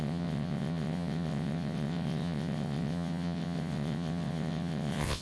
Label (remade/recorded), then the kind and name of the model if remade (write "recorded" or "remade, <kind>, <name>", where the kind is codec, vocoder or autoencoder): remade, vocoder, WaveNeXt